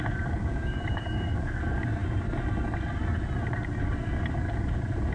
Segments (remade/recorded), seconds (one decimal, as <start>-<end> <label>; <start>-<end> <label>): 0.0-0.4 recorded; 0.4-1.6 remade; 1.6-5.1 recorded